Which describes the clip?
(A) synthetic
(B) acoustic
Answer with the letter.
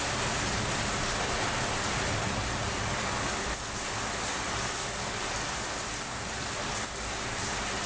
B